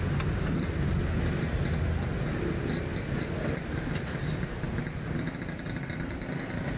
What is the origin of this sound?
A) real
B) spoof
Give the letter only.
A